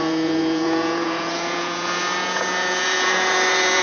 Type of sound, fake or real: fake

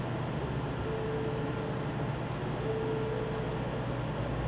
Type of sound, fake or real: real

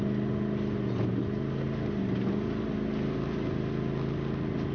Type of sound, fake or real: real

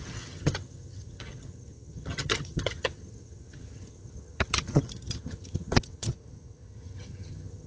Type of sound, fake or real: fake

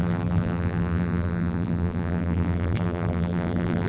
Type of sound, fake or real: fake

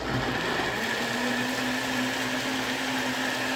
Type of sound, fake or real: real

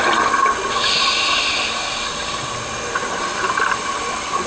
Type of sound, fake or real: real